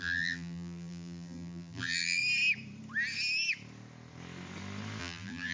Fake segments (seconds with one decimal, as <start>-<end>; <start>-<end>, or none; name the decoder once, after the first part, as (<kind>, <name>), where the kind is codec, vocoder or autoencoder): 0.0-2.2 (vocoder, BigVGAN v2); 5.0-5.5